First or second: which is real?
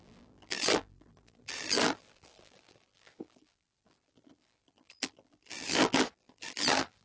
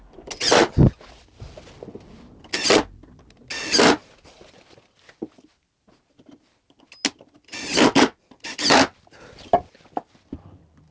second